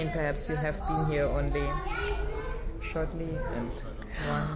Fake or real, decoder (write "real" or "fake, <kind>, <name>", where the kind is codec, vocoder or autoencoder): real